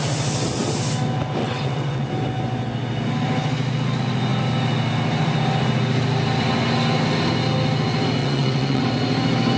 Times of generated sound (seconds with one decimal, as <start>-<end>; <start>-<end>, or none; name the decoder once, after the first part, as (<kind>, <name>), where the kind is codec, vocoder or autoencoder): 1.4-2.1 (vocoder, WaveNeXt); 8.2-8.8